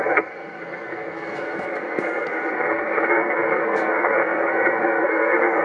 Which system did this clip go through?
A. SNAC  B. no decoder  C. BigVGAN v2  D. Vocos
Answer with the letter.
A